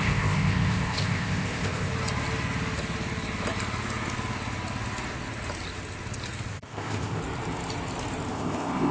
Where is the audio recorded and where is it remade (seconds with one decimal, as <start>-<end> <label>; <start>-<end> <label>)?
0.0-1.9 remade; 1.9-6.5 recorded; 6.5-7.2 remade; 7.2-8.3 recorded; 8.3-8.9 remade